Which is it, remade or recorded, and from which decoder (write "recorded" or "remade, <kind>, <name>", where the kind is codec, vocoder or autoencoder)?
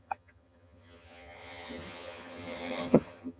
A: remade, vocoder, HiFi-GAN